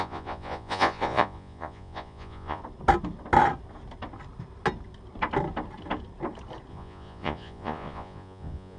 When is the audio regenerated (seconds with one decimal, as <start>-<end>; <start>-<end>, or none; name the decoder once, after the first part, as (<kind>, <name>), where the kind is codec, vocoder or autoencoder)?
0.0-2.6 (vocoder, Vocos); 6.7-8.8